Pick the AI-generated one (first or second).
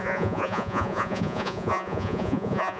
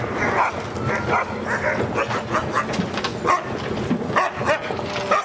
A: first